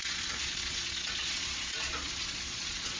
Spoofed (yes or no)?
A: yes